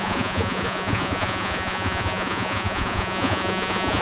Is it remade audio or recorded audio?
remade